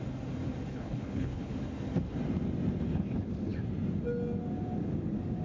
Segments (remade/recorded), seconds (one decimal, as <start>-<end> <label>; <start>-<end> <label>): 0.0-0.7 recorded; 0.7-1.5 remade; 1.5-5.4 recorded